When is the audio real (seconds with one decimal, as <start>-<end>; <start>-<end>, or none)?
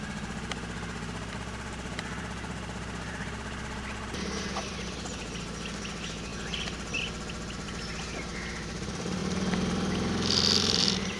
6.3-7.5